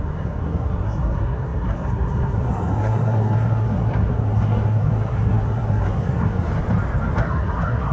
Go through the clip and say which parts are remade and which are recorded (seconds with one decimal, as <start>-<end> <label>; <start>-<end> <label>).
0.0-6.5 remade; 6.5-7.2 recorded; 7.2-7.9 remade